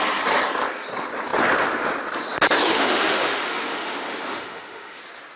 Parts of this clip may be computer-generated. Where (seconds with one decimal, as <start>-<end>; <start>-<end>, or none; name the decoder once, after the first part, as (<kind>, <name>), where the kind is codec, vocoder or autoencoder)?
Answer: 2.7-5.0 (autoencoder, DAC-VAE)